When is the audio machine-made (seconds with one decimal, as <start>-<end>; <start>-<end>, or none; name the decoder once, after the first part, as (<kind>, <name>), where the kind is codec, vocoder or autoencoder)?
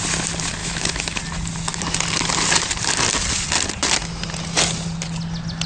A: 0.6-1.2 (autoencoder, DAC-VAE)